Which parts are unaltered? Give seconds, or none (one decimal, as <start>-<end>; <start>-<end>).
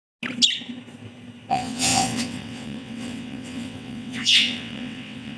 0.0-1.5